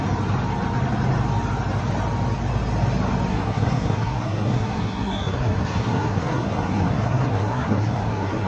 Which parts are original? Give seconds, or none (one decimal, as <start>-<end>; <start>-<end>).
0.0-3.3